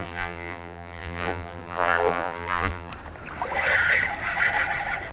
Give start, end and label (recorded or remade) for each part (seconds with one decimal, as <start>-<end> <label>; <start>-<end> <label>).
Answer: 0.0-2.9 remade; 2.9-5.1 recorded